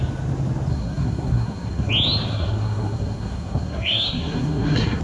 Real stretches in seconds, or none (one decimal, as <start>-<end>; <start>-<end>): 0.0-0.7; 1.9-2.3